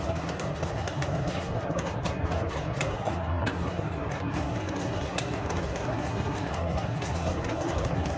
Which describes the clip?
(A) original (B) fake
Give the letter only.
B